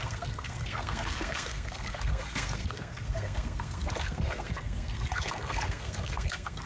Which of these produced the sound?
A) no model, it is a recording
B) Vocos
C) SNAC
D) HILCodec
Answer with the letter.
C